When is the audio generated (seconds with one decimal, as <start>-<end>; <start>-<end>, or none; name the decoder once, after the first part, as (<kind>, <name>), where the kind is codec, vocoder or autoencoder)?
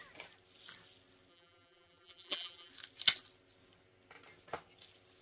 1.3-2.7 (vocoder, BigVGAN v2)